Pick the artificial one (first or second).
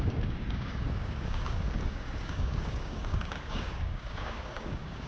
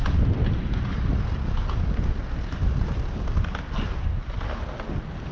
first